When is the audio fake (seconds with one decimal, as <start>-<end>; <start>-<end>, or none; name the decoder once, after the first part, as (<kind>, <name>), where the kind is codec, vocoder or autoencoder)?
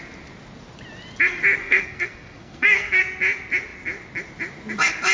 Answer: 1.6-3.0 (codec, SNAC)